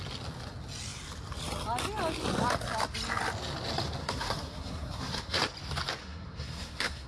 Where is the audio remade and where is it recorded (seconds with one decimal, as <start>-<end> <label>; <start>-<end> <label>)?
0.0-4.0 recorded; 4.0-5.4 remade; 5.4-6.0 recorded; 6.0-7.1 remade